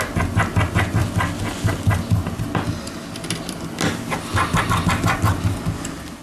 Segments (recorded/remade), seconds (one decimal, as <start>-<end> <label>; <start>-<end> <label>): 0.0-6.2 recorded